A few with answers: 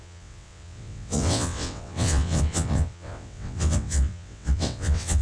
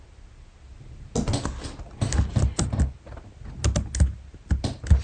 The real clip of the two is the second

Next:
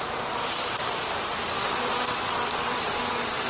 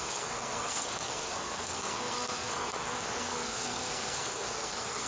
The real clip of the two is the first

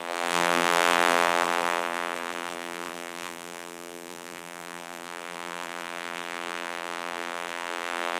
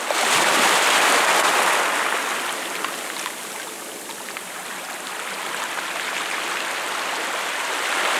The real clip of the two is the second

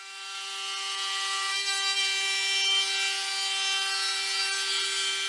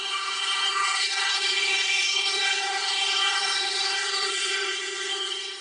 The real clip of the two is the first